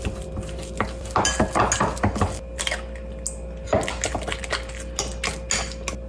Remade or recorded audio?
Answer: recorded